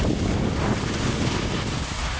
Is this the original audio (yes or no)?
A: yes